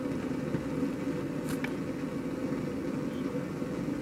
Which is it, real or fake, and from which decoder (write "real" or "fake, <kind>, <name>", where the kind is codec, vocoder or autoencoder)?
real